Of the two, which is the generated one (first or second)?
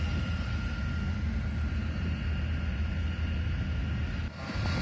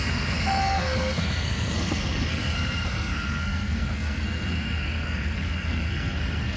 second